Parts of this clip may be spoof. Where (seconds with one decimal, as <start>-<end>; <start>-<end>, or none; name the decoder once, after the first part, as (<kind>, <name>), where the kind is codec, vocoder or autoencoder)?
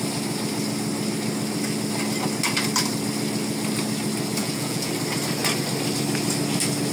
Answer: 4.4-4.9 (vocoder, Vocos)